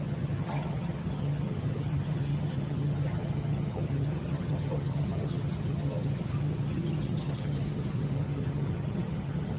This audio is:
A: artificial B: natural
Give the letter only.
A